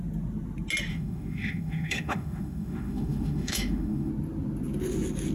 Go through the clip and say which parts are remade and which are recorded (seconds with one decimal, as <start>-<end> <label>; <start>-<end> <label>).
0.0-0.9 recorded; 0.9-4.1 remade; 4.1-5.3 recorded